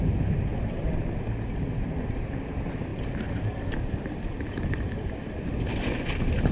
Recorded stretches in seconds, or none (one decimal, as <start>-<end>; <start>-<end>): 0.0-0.5; 1.2-2.9; 5.1-6.5